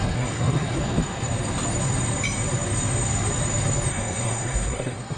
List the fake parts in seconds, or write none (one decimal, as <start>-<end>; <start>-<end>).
0.0-0.8; 3.9-5.2